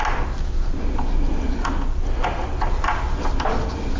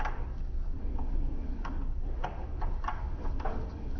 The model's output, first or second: second